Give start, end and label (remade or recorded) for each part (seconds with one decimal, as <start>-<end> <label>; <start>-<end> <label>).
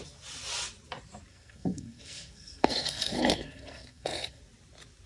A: 0.0-1.3 recorded; 1.3-4.4 remade; 4.4-5.1 recorded